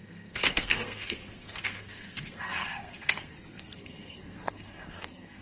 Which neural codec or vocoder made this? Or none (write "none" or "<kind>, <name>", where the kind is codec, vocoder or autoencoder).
codec, SNAC